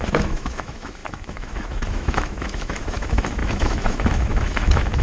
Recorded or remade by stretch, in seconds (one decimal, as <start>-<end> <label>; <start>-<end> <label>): 0.0-5.0 remade